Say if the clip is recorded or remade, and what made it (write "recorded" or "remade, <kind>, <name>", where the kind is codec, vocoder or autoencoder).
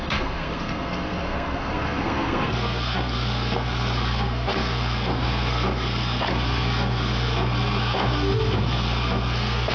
remade, codec, SNAC